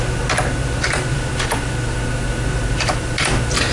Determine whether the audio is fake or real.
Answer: real